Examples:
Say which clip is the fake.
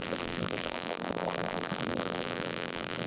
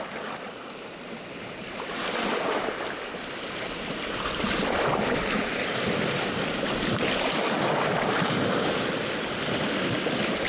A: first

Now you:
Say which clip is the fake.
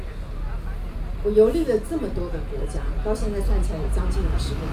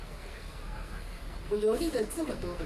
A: second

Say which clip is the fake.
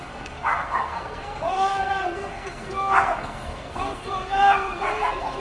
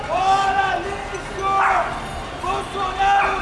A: first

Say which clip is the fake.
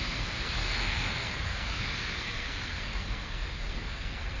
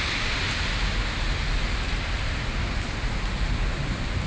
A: first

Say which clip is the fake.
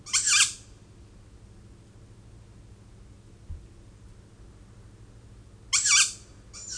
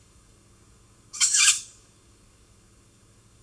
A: second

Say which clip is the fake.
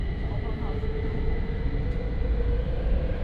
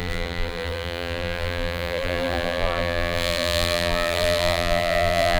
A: second